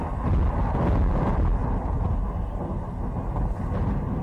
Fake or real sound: real